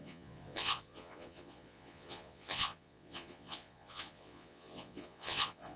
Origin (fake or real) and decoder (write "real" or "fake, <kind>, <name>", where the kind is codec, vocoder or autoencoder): fake, vocoder, Vocos